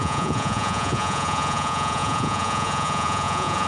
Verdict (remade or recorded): remade